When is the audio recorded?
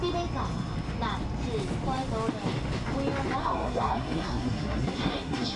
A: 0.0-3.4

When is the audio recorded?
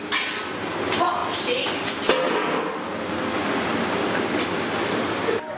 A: 0.0-5.6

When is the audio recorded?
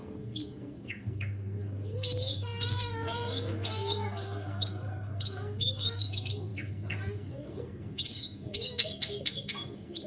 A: none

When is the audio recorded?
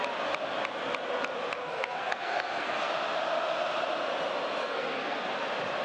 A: 0.0-1.6; 2.9-4.6; 5.3-5.8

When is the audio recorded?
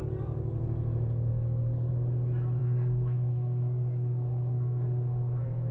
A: 0.0-1.3; 1.9-2.6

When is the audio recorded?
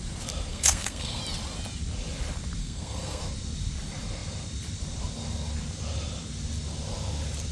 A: 0.0-0.5; 1.2-2.6; 3.2-7.5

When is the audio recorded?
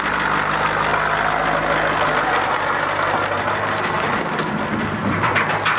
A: 0.0-5.8